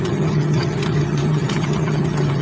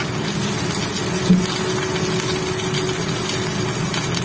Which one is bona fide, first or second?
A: second